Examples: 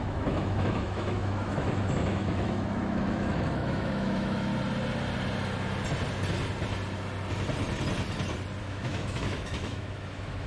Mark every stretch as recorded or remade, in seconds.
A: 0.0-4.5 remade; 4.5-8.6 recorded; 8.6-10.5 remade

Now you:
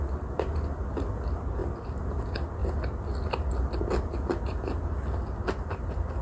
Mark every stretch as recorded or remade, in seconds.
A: 0.0-6.2 recorded

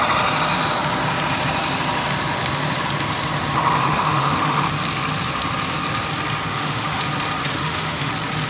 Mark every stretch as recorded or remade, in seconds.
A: 0.0-3.8 recorded; 3.8-4.6 remade; 4.6-6.5 recorded; 6.5-7.0 remade; 7.0-7.4 recorded; 7.4-8.1 remade; 8.1-8.5 recorded

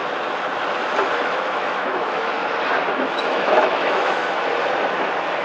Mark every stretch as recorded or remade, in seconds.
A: 0.0-1.2 recorded; 1.2-2.4 remade; 2.4-2.9 recorded; 2.9-4.2 remade; 4.2-5.4 recorded